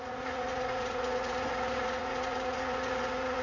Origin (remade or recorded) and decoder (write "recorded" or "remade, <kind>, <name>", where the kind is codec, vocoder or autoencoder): remade, vocoder, Vocos